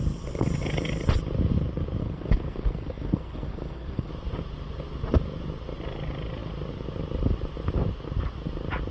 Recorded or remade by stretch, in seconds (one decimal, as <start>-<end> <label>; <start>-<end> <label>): 0.0-2.0 recorded; 2.0-4.1 remade; 4.1-8.9 recorded